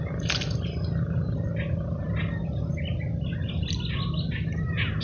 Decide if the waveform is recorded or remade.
recorded